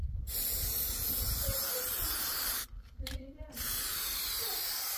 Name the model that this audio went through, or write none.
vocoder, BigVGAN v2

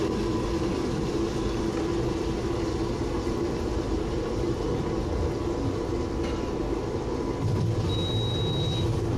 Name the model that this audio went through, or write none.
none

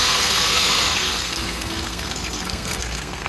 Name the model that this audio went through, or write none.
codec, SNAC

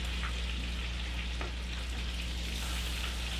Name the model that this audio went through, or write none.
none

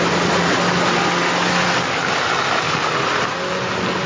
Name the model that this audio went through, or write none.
none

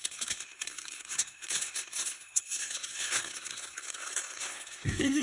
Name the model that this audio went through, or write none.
codec, SNAC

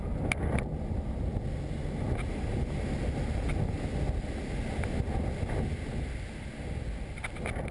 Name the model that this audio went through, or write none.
none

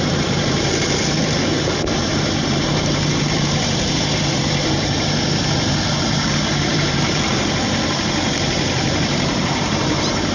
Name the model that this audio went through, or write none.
vocoder, BigVGAN v2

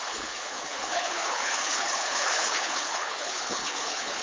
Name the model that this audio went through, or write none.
codec, HILCodec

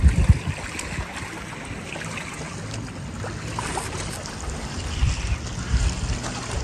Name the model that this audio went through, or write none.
none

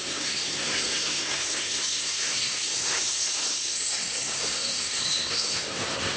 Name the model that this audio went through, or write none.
codec, SNAC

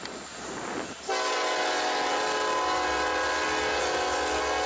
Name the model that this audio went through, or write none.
none